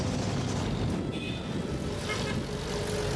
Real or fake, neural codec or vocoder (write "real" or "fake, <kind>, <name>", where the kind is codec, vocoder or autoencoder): real